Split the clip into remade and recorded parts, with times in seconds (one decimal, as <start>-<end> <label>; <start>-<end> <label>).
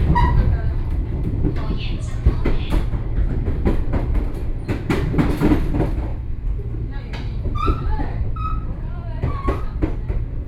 0.0-6.1 remade; 6.1-7.1 recorded; 7.1-10.5 remade